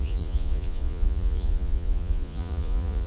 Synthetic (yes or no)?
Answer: yes